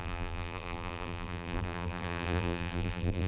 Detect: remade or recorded remade